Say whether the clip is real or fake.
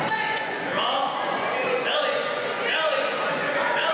fake